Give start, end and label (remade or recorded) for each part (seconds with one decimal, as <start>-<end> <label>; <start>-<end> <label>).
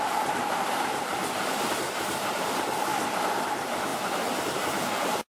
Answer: 0.0-2.9 remade; 2.9-3.4 recorded; 3.4-5.3 remade